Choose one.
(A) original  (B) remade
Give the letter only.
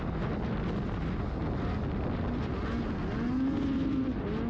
A